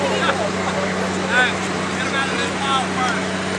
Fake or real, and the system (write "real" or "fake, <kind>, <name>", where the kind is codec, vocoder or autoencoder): real